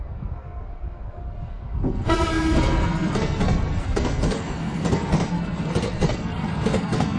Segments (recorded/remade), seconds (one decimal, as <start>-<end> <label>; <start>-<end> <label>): 0.0-7.2 remade